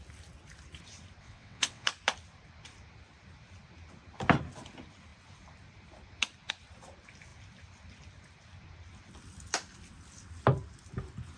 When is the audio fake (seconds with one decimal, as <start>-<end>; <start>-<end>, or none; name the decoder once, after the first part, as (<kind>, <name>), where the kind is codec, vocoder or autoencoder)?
1.2-1.9 (vocoder, WaveNeXt)